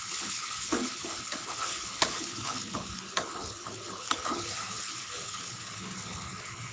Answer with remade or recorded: remade